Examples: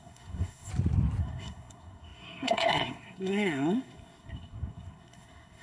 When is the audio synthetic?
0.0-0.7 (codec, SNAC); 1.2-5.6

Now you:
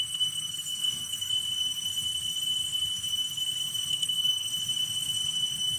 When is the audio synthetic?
0.0-1.3 (codec, SNAC); 3.9-4.5

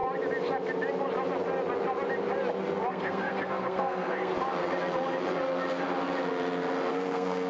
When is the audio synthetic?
2.9-4.3 (codec, SNAC); 6.9-7.5

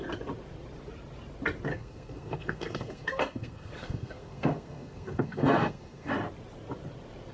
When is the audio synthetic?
1.7-6.1 (codec, SNAC)

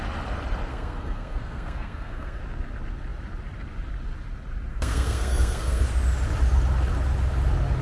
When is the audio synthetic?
0.7-2.4 (codec, SNAC); 4.7-5.8

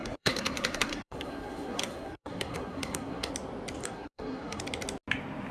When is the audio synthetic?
0.0-3.3 (codec, SNAC); 3.8-4.6

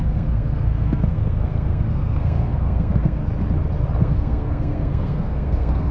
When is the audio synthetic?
0.0-3.2 (codec, SNAC); 4.0-5.9